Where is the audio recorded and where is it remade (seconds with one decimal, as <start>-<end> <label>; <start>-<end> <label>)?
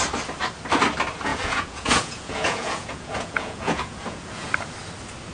0.0-1.3 recorded; 1.3-4.5 remade; 4.5-5.3 recorded